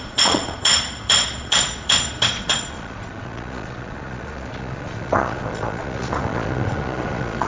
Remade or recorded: remade